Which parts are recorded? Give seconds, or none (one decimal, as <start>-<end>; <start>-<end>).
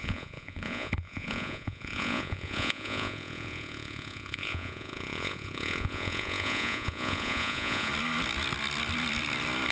7.9-9.7